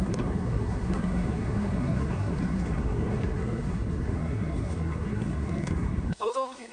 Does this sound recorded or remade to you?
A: remade